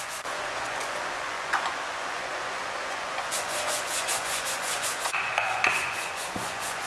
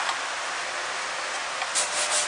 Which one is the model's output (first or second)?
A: first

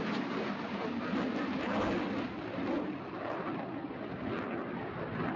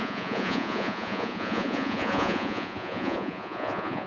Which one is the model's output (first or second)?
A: second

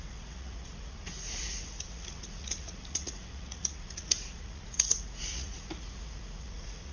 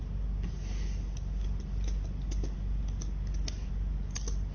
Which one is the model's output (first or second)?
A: first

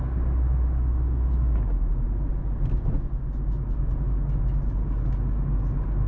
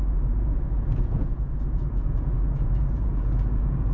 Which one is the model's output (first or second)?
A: second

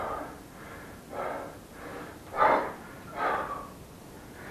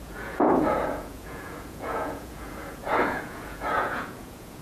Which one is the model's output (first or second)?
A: second